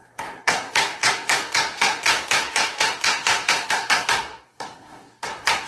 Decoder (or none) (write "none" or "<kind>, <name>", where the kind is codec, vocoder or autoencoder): codec, SNAC